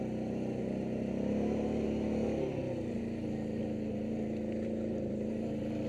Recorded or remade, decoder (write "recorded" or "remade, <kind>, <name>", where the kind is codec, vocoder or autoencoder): recorded